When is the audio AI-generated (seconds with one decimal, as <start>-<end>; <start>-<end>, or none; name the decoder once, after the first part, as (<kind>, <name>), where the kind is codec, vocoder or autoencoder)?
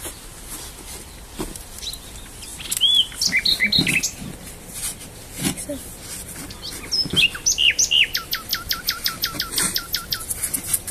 none